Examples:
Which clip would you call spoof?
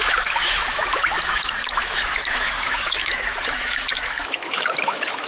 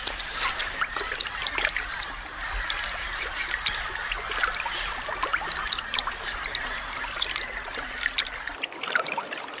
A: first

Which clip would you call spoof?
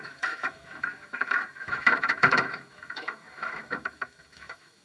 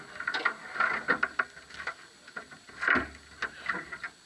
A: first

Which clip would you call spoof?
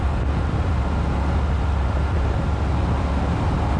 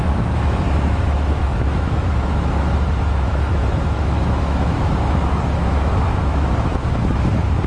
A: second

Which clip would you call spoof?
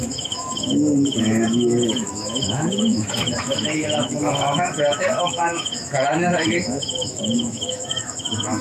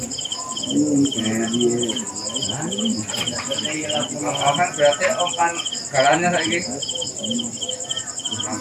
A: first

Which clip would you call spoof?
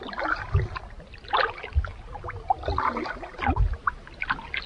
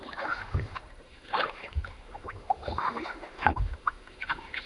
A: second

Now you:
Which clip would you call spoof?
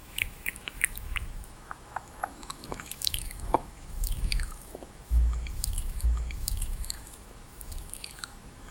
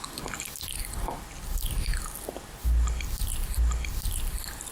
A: first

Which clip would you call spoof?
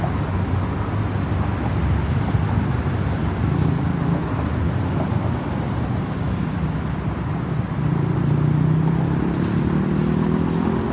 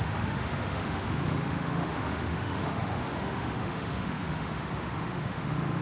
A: second